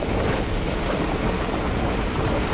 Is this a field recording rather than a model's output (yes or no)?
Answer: yes